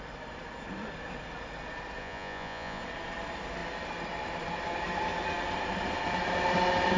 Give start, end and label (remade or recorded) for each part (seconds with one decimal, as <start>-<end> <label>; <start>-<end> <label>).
0.0-2.0 recorded; 2.0-2.8 remade; 2.8-7.0 recorded